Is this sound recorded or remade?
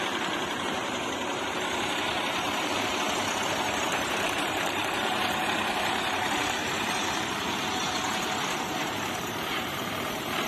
remade